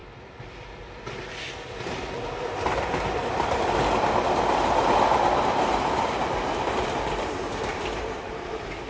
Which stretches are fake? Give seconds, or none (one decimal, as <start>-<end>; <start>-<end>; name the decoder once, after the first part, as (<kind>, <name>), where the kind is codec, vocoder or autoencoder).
2.1-3.2 (vocoder, BigVGAN v2); 7.1-8.9